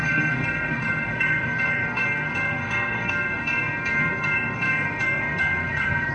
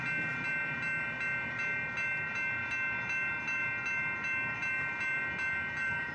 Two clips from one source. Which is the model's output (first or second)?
first